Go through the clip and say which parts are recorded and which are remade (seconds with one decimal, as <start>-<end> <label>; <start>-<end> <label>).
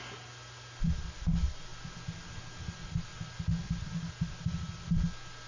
0.0-5.5 recorded